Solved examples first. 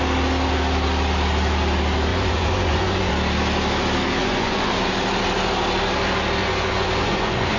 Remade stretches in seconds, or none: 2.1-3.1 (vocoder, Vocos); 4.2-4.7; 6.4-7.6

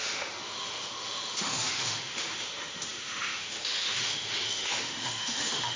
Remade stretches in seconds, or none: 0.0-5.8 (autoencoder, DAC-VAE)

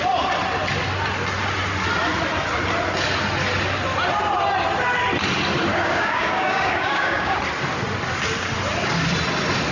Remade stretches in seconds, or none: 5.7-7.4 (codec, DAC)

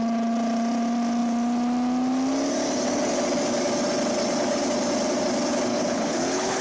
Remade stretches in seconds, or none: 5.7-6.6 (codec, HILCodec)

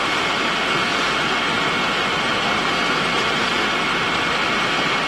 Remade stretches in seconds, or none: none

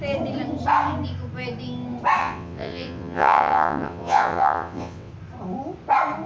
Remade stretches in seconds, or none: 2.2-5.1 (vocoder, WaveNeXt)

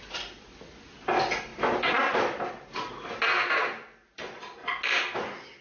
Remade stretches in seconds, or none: none